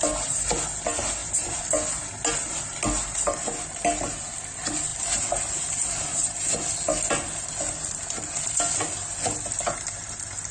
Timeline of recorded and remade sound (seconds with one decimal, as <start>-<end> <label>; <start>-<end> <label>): 0.0-10.5 recorded